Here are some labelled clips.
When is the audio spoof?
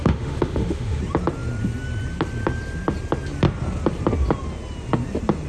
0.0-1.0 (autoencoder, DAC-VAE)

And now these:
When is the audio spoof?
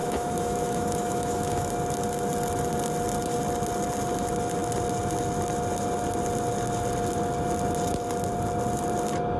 0.0-1.7 (autoencoder, DAC-VAE)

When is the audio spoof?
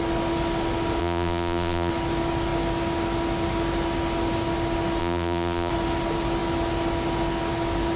1.0-1.9 (vocoder, BigVGAN v2); 5.0-5.7